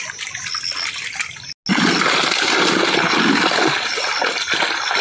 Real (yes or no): yes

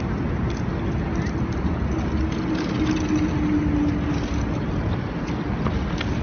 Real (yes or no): yes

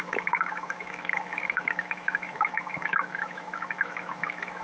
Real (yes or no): no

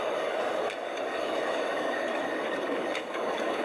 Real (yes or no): no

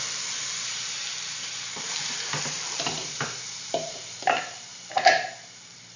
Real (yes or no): no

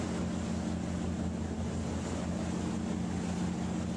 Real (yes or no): yes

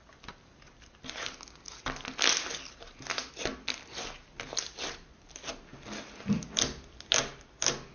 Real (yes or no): yes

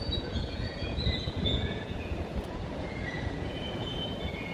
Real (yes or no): no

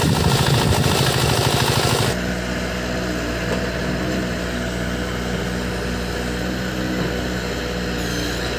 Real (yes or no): yes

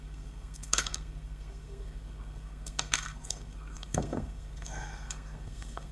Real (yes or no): no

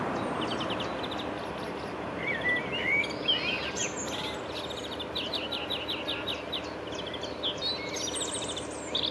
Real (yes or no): yes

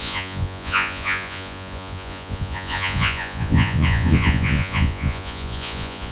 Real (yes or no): no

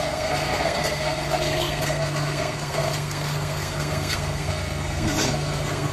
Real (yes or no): no